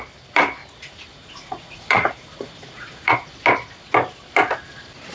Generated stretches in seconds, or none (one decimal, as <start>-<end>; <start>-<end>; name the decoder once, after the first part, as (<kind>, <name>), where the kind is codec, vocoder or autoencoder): 0.6-3.3 (vocoder, Vocos)